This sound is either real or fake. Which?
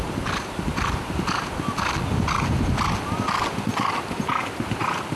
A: real